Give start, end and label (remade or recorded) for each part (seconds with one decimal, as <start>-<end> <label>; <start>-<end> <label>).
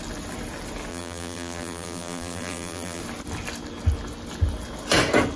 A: 0.0-0.9 recorded; 0.9-3.0 remade; 3.0-5.4 recorded